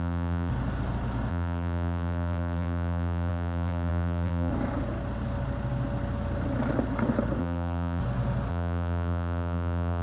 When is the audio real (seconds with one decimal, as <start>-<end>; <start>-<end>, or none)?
0.5-1.3; 4.5-7.4; 8.0-8.5